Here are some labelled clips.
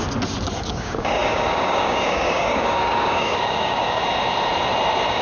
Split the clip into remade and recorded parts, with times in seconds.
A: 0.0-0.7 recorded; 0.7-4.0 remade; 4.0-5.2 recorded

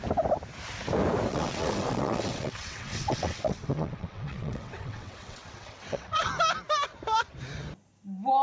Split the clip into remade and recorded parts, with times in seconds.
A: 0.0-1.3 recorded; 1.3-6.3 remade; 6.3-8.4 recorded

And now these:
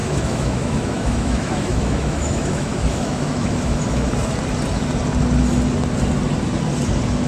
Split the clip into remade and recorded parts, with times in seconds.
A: 0.0-4.1 remade; 4.1-7.3 recorded

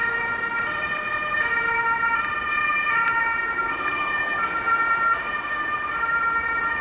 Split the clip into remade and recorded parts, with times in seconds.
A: 0.0-6.8 remade